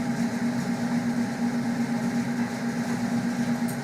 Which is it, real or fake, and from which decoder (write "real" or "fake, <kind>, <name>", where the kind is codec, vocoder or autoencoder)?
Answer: real